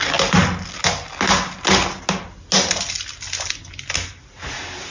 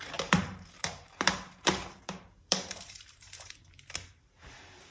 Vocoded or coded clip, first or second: second